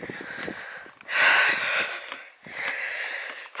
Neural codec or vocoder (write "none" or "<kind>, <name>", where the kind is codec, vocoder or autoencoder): none